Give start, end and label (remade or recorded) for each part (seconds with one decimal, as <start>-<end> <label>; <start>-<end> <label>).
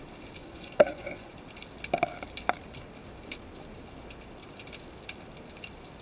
0.0-0.4 recorded; 0.4-1.3 remade; 1.3-6.0 recorded